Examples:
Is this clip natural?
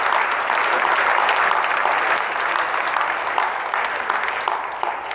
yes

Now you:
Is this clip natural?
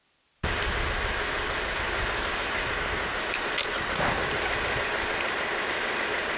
yes